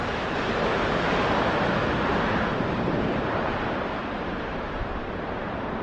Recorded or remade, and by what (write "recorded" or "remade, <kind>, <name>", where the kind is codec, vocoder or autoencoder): remade, vocoder, BigVGAN v2